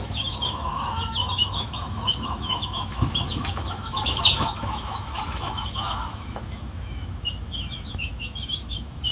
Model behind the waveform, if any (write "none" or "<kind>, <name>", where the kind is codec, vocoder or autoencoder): autoencoder, DAC-VAE